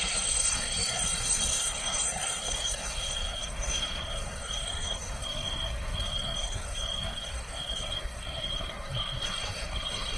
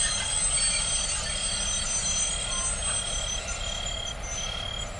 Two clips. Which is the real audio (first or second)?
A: second